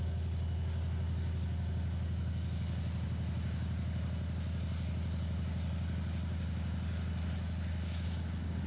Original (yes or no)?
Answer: yes